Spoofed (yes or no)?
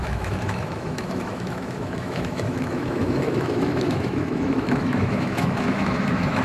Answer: yes